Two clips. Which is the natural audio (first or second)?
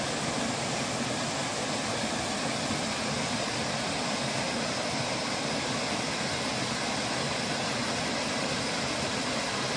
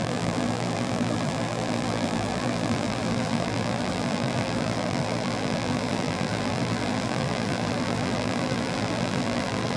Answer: first